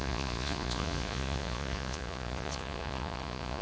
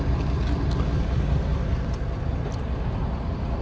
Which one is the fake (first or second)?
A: first